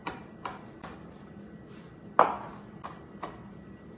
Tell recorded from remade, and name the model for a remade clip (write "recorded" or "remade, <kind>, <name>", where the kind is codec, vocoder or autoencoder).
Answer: recorded